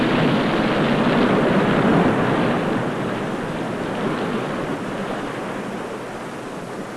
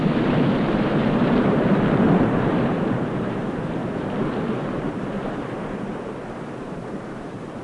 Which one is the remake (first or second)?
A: second